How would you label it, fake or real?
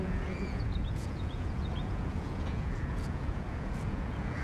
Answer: fake